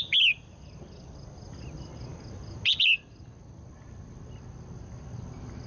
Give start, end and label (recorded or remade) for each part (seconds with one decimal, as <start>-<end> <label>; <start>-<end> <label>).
0.0-5.7 recorded

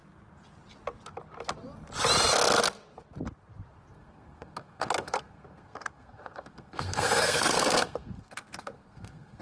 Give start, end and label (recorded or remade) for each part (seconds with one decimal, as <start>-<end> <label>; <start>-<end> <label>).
0.0-3.9 recorded; 3.9-9.4 remade

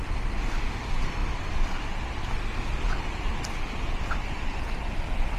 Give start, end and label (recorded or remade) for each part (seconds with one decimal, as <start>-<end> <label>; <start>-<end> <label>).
0.0-5.4 recorded

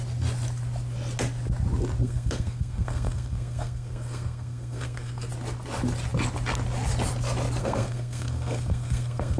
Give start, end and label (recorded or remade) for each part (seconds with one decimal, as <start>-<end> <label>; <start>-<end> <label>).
0.0-2.0 recorded; 2.0-5.3 remade; 5.3-7.6 recorded; 7.6-9.4 remade

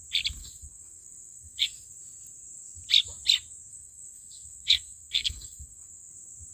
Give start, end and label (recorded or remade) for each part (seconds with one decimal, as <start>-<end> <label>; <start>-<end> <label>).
0.0-0.4 recorded; 0.4-1.9 remade; 1.9-3.7 recorded; 3.7-6.1 remade; 6.1-6.5 recorded

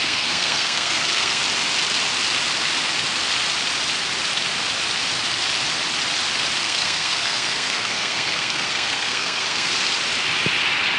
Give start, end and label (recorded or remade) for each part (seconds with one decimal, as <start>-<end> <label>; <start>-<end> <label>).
0.0-1.4 remade; 1.4-6.6 recorded; 6.6-9.7 remade; 9.7-11.0 recorded

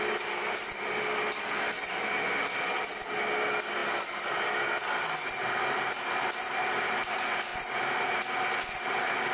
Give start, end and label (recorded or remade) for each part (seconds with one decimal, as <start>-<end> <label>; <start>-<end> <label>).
0.0-9.3 recorded